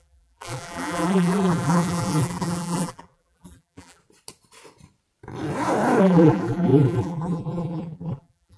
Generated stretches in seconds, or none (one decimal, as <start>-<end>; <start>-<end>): 0.0-4.0; 6.0-8.6